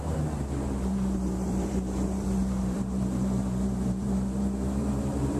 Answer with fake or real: fake